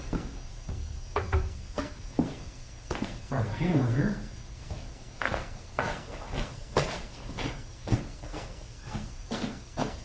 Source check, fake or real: fake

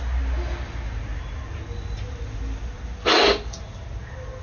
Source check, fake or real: real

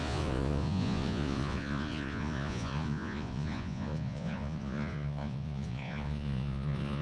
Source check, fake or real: fake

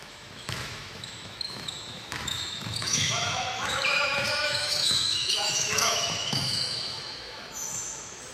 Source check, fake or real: fake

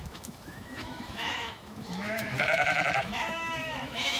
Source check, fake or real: fake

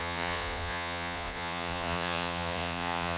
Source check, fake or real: fake